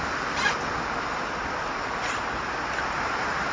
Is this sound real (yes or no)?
yes